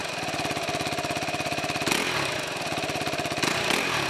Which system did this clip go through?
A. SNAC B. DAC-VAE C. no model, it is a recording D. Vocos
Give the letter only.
C